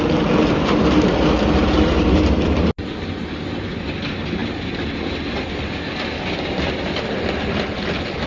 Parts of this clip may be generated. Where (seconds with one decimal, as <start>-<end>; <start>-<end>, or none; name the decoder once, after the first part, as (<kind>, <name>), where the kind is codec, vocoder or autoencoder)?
none